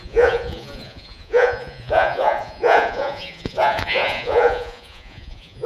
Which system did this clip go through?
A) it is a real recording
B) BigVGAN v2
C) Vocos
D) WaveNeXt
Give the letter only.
C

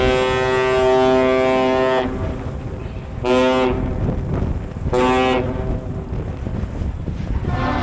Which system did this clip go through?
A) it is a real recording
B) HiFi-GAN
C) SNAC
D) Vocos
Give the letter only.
A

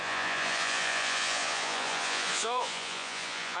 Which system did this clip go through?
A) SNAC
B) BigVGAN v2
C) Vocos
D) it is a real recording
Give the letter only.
C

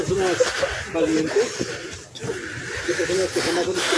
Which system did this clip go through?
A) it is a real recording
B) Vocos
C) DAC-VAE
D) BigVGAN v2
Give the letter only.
A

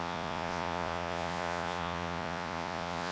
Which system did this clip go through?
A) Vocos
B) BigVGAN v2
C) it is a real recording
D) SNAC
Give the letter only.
A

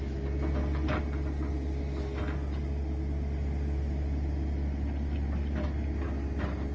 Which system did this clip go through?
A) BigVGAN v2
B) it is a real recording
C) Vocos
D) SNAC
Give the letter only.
B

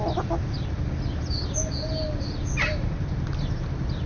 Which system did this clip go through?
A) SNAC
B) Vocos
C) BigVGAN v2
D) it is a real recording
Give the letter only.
D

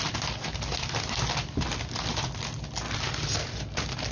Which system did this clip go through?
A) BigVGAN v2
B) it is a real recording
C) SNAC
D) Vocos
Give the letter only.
B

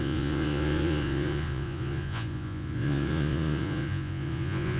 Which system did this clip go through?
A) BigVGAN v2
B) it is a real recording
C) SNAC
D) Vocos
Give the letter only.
D